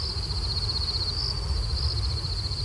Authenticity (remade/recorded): recorded